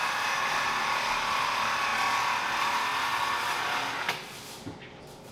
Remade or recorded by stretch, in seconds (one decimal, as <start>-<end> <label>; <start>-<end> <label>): 0.0-5.3 recorded